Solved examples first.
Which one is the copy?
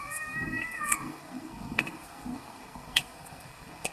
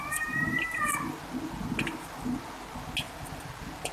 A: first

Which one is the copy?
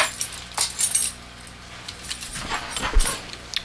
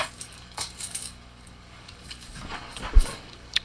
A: second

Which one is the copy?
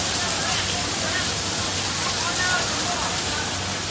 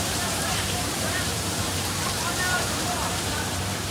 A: second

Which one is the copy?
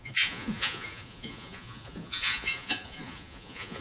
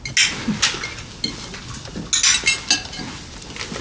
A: first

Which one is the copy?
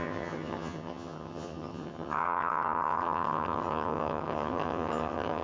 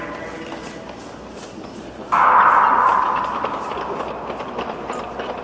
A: first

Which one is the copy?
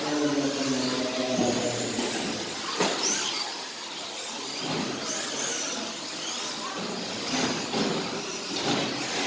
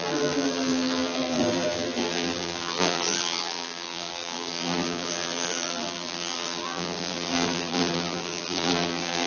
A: second